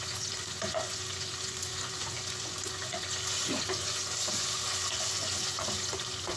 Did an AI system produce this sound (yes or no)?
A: yes